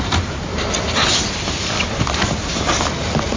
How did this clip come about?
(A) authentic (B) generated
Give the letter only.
B